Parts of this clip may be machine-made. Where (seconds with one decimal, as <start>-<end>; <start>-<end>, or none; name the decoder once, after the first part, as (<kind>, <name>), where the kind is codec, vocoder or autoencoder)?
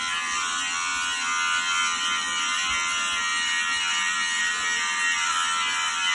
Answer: none